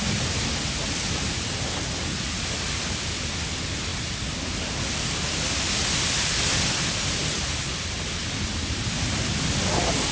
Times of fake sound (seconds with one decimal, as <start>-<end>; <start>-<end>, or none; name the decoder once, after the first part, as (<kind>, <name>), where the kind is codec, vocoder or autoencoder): none